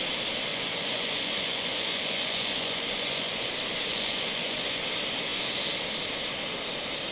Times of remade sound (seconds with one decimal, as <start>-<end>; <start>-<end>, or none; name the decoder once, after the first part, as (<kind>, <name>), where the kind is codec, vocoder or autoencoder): 0.5-3.5 (vocoder, Vocos); 3.9-4.8